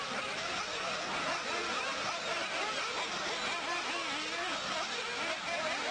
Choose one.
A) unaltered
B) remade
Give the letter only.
A